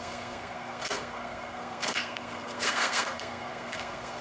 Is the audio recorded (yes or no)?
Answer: no